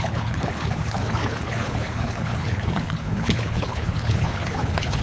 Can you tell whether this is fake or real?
fake